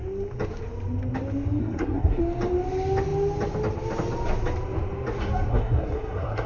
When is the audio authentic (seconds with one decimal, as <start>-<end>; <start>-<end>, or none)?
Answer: 0.0-1.6; 2.2-5.5